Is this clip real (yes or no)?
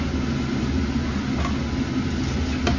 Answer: yes